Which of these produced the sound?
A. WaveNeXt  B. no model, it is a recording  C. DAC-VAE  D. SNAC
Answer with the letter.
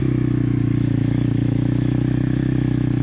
C